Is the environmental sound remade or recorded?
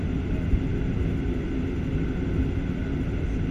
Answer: recorded